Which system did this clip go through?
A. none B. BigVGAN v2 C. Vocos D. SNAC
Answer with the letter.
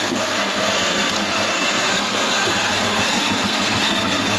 D